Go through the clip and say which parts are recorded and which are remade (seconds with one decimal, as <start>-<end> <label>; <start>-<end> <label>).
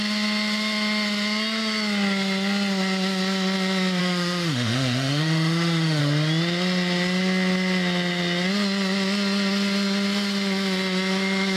0.0-4.0 recorded; 4.0-6.0 remade; 6.0-11.6 recorded